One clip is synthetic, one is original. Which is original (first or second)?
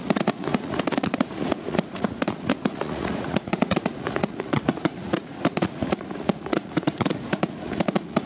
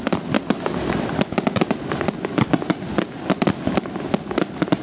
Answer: second